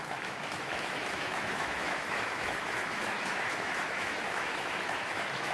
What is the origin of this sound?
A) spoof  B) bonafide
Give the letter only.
A